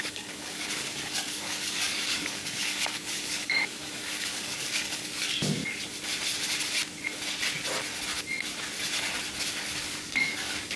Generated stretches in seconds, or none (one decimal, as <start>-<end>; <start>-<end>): 0.0-5.6; 9.5-10.8